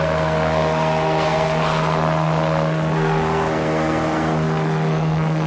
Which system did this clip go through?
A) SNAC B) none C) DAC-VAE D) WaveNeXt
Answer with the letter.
A